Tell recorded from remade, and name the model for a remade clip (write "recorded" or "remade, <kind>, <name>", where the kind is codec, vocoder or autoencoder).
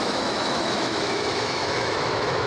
remade, autoencoder, DAC-VAE